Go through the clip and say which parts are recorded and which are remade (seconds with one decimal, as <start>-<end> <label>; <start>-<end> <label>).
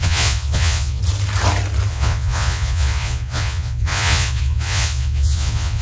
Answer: 0.0-1.0 remade; 1.0-1.9 recorded; 1.9-5.8 remade